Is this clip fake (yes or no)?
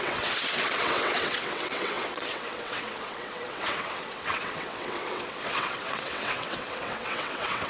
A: yes